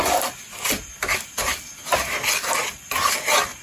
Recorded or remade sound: recorded